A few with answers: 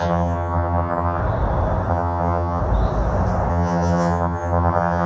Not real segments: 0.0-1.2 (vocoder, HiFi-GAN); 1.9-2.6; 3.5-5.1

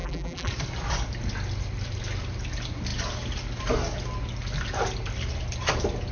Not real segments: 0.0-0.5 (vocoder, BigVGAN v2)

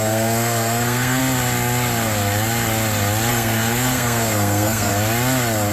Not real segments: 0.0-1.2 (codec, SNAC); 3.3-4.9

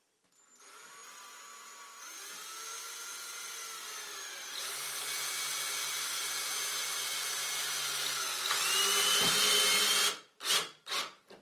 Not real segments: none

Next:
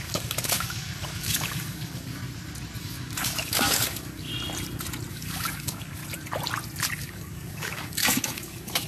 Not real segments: 0.0-2.2 (codec, DAC); 2.8-4.3; 5.1-6.0; 7.0-8.9

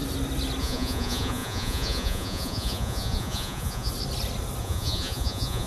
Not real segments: 0.6-3.9 (vocoder, Vocos); 4.6-5.7